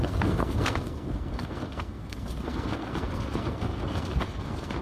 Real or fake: fake